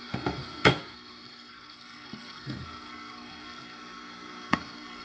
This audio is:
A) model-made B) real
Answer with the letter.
A